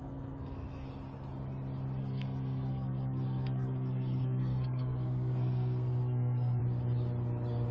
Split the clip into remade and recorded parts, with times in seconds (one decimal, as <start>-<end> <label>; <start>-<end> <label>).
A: 0.0-0.9 remade; 0.9-2.0 recorded; 2.0-6.6 remade; 6.6-7.7 recorded